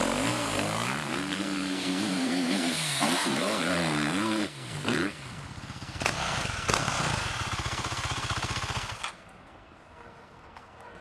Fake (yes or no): yes